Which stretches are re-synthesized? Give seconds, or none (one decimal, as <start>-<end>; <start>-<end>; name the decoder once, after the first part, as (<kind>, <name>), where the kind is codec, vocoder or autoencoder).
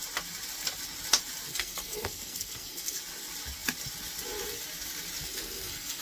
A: 1.5-3.0 (codec, SNAC); 5.2-6.0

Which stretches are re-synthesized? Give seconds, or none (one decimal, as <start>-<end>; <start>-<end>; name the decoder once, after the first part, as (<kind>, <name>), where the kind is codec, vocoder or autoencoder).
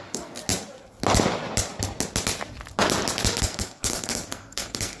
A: 0.0-0.4 (codec, SNAC); 3.4-5.0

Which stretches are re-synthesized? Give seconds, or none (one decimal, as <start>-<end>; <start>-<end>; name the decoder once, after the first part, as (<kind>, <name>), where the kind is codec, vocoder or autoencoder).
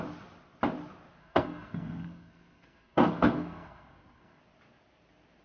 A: 1.2-4.4 (codec, SNAC)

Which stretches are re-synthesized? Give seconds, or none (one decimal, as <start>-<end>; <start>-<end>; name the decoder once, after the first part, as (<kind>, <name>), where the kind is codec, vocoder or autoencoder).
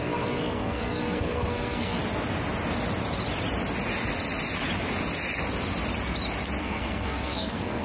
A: 0.0-2.0 (codec, SNAC); 6.6-7.8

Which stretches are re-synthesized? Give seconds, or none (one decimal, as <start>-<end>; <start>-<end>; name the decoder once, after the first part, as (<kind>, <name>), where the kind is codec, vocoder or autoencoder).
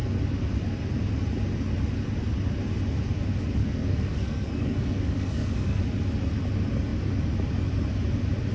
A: 3.6-5.8 (codec, SNAC)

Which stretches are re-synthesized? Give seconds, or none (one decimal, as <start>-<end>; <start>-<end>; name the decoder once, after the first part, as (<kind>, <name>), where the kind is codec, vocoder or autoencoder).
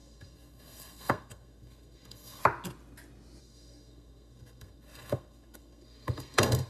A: 0.0-2.4 (codec, SNAC); 3.4-6.7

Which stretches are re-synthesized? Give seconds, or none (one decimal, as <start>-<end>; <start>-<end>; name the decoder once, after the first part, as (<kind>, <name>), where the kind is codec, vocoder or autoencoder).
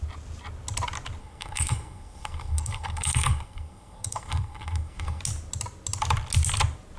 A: 1.2-5.2 (codec, SNAC)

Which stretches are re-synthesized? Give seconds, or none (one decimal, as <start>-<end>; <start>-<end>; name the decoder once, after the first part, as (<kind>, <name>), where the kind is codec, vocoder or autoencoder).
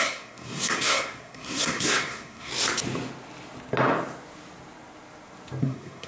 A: 0.0-2.5 (codec, SNAC); 5.6-6.1